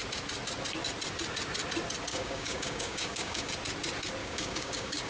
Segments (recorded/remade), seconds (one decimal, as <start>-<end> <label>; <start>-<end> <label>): 0.0-2.1 recorded; 2.1-3.5 remade; 3.5-4.2 recorded; 4.2-5.1 remade

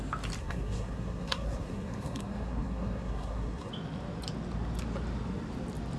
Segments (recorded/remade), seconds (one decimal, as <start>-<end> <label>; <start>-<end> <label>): 0.0-0.4 recorded; 0.4-3.7 remade; 3.7-6.0 recorded

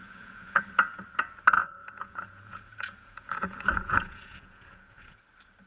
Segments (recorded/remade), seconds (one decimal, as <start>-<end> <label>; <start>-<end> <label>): 0.0-0.6 remade; 0.6-1.8 recorded; 1.8-5.2 remade; 5.2-5.7 recorded

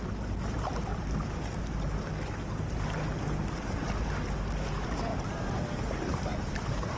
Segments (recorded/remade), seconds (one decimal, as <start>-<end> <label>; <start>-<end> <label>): 0.0-5.1 recorded; 5.1-7.0 remade

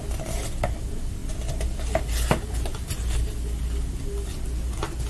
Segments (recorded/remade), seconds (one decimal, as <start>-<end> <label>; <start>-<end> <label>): 0.0-5.1 recorded